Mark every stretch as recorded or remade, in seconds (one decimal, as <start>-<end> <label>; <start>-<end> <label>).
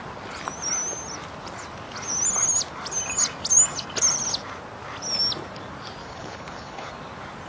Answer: 0.0-6.0 recorded; 6.0-6.9 remade; 6.9-7.5 recorded